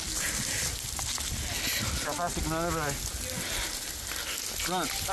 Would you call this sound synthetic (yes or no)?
no